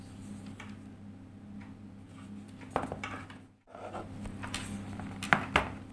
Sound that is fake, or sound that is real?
real